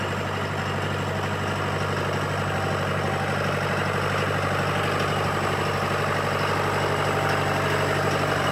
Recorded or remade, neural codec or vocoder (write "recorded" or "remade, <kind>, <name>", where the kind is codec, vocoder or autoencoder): recorded